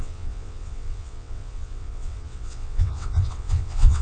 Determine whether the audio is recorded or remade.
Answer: remade